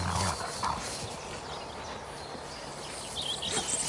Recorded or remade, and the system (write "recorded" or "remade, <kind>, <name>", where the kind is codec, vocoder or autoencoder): recorded